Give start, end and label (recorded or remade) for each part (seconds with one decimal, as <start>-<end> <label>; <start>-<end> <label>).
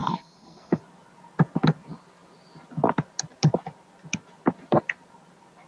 0.0-0.8 remade; 0.8-5.7 recorded